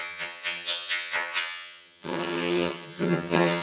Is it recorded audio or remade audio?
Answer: remade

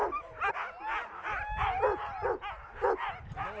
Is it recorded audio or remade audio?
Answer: recorded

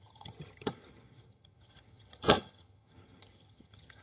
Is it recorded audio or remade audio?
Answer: remade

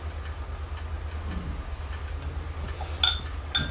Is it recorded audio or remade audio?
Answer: recorded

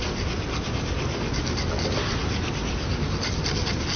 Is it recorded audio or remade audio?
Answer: recorded